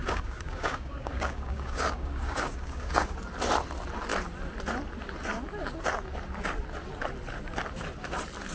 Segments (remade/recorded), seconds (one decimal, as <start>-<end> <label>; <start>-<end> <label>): 0.0-3.1 remade; 3.1-8.5 recorded